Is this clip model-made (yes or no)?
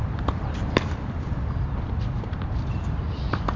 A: yes